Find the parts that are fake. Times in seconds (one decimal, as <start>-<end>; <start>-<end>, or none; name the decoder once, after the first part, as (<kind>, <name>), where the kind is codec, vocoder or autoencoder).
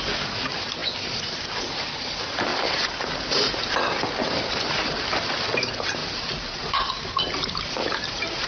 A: none